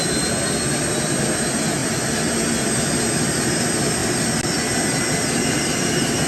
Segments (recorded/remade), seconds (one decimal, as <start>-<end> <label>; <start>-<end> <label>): 0.0-6.3 recorded